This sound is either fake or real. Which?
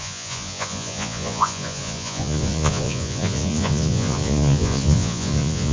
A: fake